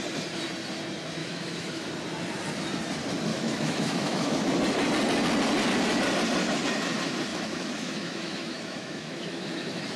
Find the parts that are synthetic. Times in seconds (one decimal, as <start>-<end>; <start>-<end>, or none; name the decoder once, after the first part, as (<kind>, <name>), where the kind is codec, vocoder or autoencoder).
1.2-1.9 (autoencoder, DAC-VAE); 3.3-4.3; 7.3-10.0